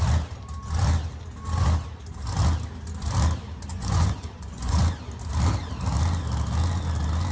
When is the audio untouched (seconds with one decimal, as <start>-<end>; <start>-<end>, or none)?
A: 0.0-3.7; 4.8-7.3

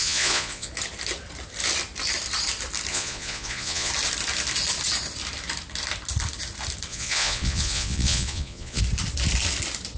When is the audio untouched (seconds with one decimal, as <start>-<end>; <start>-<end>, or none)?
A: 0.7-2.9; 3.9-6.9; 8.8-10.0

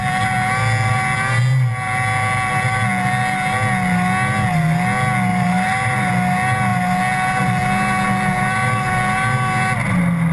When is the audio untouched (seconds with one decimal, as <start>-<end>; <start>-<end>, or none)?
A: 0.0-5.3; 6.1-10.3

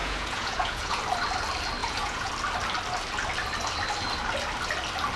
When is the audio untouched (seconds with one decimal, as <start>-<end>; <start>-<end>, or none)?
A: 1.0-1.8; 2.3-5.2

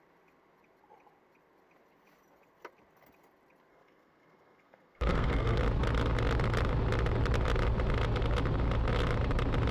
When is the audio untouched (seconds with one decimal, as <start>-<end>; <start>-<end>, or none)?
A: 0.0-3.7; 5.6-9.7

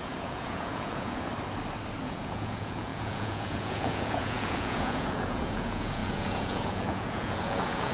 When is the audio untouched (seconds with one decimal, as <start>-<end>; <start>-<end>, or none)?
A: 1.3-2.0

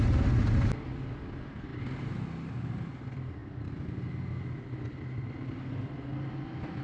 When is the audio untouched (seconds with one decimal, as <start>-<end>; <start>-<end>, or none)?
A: 0.0-6.8